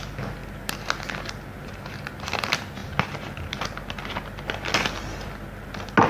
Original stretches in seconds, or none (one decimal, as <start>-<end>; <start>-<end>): 0.0-6.1